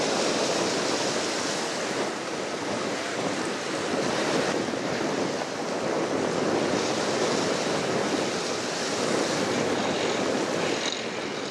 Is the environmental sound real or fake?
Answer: real